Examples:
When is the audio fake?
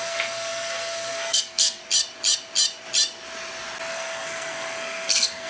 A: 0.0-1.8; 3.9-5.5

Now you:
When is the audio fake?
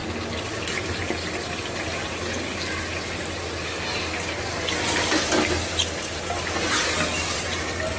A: none